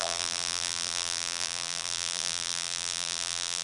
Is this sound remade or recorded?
remade